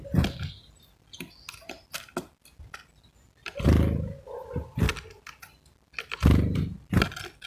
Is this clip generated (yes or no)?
no